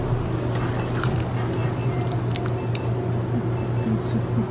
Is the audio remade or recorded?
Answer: recorded